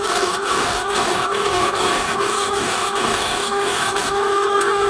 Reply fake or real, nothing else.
fake